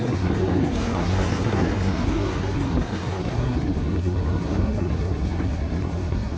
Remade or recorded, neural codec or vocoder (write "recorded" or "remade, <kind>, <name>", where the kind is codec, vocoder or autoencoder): remade, codec, SNAC